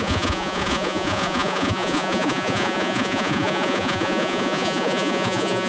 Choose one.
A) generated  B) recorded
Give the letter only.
A